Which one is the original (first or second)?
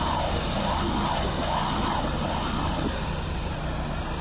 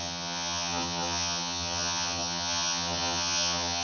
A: first